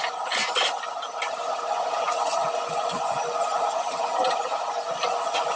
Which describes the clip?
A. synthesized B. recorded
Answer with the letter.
B